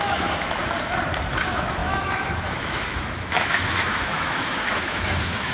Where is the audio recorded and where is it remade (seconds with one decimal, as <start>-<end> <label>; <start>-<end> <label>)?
0.0-0.6 remade; 0.6-1.3 recorded; 1.3-5.5 remade